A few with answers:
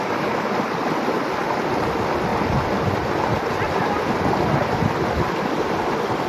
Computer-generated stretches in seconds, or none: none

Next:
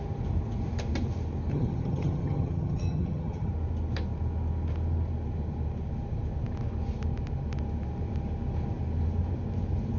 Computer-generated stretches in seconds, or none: 1.5-3.5 (vocoder, HiFi-GAN)

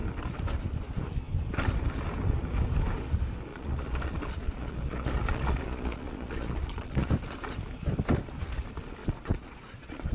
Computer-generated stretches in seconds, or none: 3.5-7.1 (vocoder, Vocos); 9.0-10.1

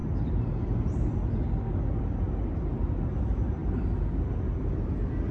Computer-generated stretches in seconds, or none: none

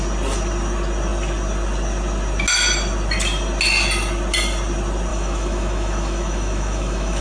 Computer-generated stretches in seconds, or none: 5.1-7.2 (autoencoder, DAC-VAE)